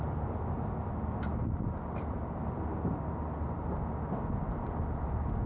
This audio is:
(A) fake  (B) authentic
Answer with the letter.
B